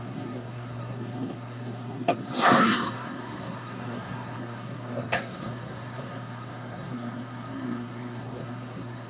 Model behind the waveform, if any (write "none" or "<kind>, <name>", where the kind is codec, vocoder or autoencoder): codec, SNAC